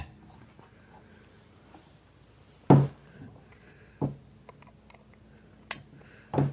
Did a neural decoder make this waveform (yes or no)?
no